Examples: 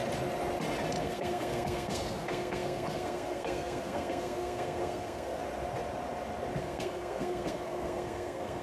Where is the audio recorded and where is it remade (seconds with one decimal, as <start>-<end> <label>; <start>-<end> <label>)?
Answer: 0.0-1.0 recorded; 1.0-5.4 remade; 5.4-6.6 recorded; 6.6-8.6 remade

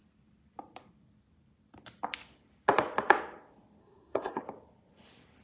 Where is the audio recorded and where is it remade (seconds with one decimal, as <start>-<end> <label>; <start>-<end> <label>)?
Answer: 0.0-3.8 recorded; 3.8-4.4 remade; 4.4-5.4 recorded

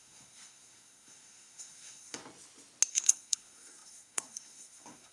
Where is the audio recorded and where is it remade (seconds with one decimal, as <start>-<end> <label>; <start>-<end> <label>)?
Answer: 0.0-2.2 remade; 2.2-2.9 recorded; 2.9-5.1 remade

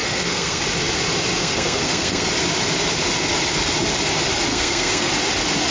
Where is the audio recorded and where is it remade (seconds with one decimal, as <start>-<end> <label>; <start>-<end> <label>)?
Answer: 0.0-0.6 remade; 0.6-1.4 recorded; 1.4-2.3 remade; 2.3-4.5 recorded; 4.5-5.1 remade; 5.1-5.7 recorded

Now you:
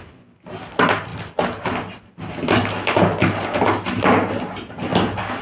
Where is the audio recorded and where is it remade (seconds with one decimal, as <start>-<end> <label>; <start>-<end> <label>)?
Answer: 0.0-5.4 recorded